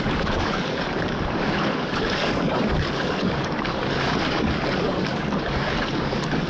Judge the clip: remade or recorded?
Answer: remade